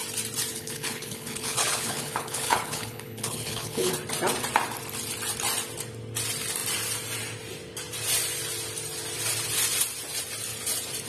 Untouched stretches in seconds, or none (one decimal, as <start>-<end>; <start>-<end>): 0.0-0.5; 3.9-11.1